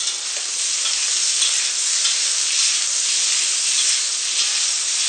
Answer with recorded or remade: recorded